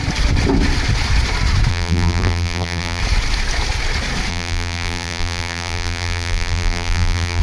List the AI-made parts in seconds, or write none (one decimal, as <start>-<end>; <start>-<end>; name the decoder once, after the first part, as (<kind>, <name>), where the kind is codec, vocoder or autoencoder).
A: 1.7-3.0 (vocoder, BigVGAN v2); 4.3-7.4